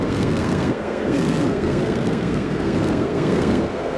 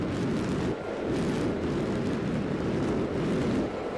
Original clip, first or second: second